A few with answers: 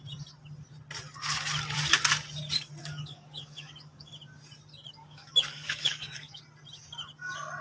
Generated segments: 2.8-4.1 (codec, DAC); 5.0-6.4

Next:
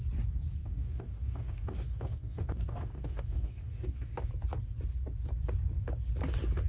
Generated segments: 0.6-4.3 (codec, DAC)

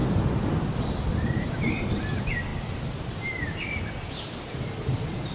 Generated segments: none

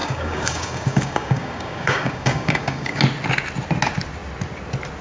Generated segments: 0.0-3.0 (codec, DAC)

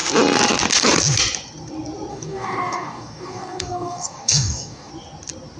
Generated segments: 2.1-4.9 (codec, DAC)

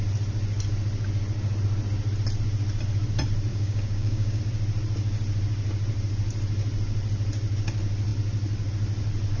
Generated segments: 3.5-4.4 (codec, DAC)

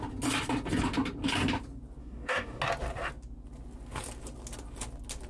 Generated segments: 2.0-2.6 (codec, DAC)